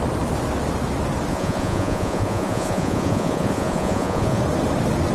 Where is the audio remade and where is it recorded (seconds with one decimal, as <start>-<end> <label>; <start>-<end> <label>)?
0.0-1.3 recorded; 1.3-4.4 remade; 4.4-5.1 recorded